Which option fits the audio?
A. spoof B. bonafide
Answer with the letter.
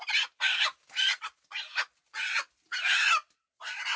B